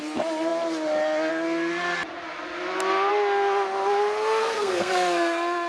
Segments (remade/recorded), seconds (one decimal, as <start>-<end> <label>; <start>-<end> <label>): 0.0-4.4 recorded; 4.4-5.7 remade